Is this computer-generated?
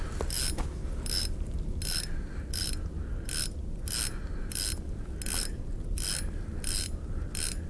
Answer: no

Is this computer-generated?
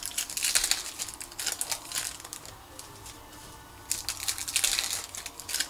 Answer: no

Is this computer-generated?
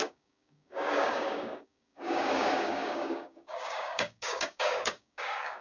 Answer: yes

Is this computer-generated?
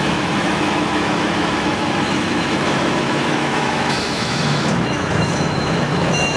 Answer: yes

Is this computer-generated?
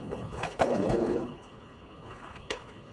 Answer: yes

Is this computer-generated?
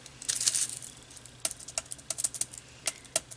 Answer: no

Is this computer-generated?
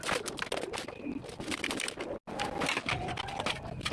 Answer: no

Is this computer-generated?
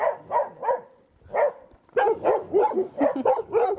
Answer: no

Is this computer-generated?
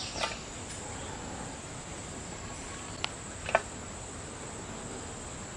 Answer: no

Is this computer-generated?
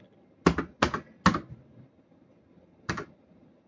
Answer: no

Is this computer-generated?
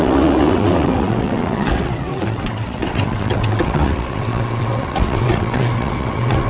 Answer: yes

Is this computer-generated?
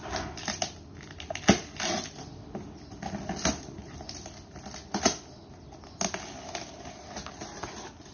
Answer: no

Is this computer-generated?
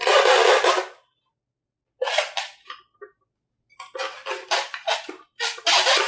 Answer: no